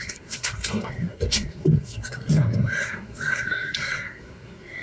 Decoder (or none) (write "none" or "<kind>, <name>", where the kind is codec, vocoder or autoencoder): codec, SNAC